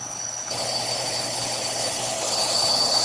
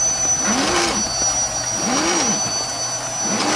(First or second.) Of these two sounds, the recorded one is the second